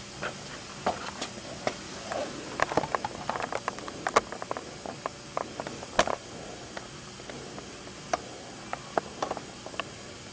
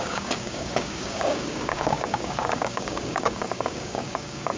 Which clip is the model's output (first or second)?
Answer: second